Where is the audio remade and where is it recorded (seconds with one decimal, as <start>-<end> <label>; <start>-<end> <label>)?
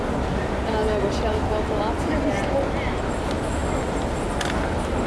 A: 0.0-5.1 recorded